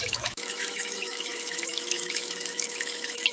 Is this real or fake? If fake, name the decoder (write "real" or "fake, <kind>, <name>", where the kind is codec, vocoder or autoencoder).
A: fake, autoencoder, DAC-VAE